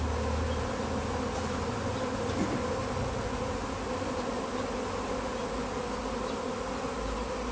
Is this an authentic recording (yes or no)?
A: yes